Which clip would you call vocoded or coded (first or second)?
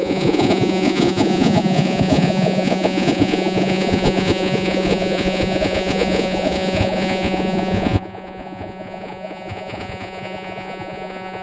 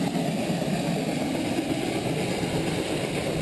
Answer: first